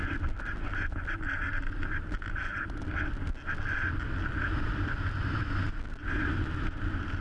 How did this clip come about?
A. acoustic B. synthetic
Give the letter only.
A